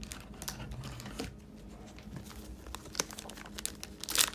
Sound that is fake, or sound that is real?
real